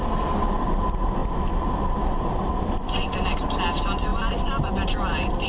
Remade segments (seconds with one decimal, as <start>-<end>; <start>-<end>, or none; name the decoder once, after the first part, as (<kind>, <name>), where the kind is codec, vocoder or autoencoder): 1.2-3.1 (vocoder, BigVGAN v2); 4.1-5.5